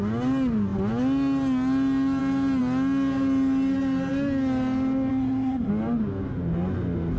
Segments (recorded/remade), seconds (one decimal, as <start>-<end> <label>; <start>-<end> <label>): 0.0-5.1 recorded; 5.1-5.7 remade; 5.7-7.2 recorded